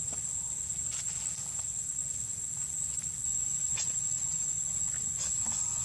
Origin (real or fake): real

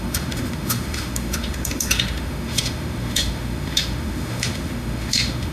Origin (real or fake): fake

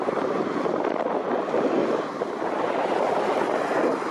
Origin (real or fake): real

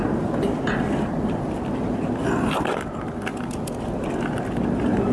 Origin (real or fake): real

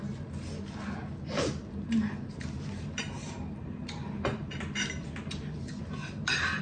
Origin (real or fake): real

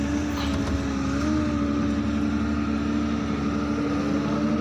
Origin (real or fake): real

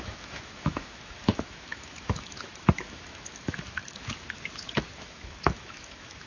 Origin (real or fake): fake